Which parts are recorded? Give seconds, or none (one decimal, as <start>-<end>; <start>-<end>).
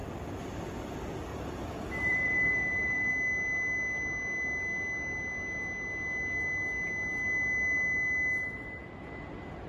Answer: 0.0-1.3; 3.1-9.7